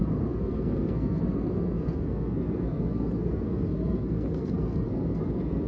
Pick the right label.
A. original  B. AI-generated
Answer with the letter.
B